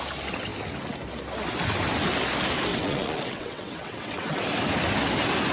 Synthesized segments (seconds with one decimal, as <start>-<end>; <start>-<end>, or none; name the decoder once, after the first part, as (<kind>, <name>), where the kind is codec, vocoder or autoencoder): 2.7-4.4 (vocoder, WaveNeXt)